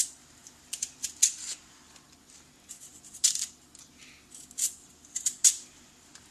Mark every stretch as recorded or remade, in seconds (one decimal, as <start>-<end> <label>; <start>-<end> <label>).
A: 0.0-6.3 recorded